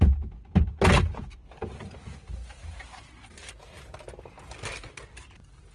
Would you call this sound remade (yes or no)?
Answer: no